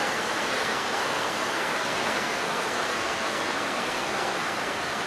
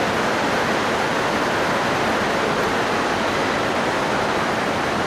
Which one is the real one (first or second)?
second